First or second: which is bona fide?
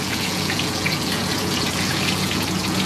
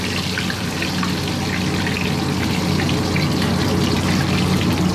second